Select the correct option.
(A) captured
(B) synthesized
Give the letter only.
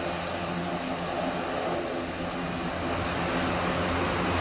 A